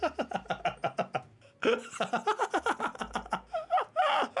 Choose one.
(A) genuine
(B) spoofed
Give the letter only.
A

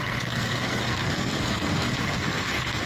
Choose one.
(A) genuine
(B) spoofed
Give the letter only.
B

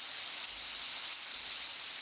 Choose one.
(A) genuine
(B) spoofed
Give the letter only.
A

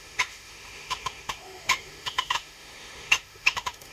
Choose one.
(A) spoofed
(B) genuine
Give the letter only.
A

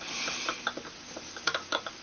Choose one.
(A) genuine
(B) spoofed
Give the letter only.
A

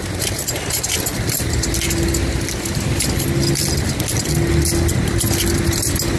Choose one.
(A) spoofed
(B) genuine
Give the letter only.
B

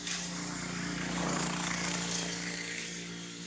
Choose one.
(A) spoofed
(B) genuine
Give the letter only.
A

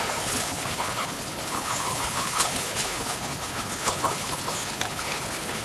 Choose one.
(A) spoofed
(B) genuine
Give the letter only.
A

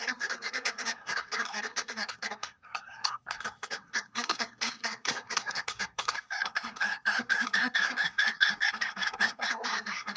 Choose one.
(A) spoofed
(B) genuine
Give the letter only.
A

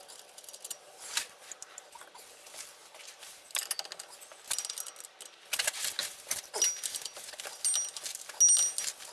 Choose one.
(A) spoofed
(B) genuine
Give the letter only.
B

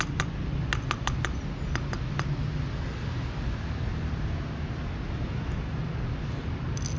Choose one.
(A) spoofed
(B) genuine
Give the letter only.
B